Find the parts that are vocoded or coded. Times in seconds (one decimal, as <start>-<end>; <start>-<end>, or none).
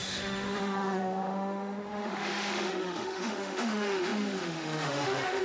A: 0.0-5.4